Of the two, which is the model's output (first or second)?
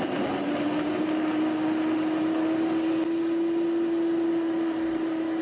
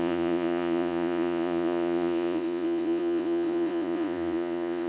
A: second